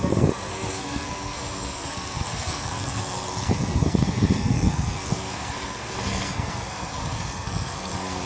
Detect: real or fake fake